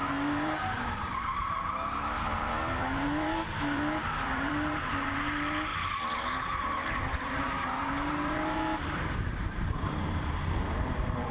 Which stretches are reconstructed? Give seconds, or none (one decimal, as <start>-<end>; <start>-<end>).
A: 0.0-5.7; 6.3-11.3